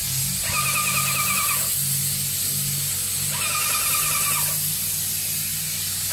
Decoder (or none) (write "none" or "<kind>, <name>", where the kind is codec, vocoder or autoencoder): none